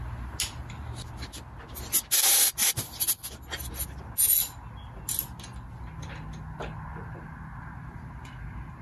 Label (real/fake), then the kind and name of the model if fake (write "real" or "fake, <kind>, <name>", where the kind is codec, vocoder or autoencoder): real